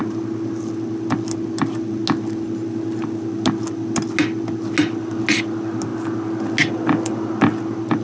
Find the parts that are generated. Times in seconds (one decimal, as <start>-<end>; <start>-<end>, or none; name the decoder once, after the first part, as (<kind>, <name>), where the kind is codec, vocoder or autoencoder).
none